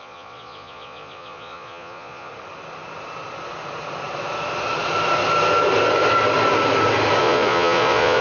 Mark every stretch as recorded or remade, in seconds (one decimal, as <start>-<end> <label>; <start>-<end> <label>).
0.0-2.3 remade; 2.3-7.2 recorded; 7.2-8.2 remade